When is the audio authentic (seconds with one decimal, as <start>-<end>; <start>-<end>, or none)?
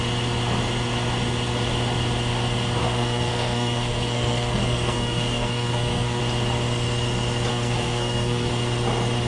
0.0-2.8; 6.2-7.5; 8.5-9.3